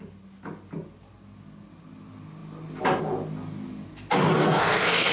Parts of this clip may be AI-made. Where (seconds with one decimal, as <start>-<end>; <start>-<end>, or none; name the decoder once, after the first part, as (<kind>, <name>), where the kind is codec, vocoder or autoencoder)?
4.4-5.1 (codec, SNAC)